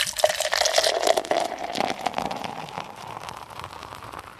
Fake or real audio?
fake